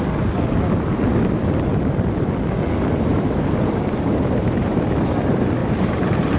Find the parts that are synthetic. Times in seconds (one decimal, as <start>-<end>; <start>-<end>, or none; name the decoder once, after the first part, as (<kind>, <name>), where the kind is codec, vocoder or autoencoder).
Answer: 3.1-4.9 (vocoder, BigVGAN v2); 5.6-6.4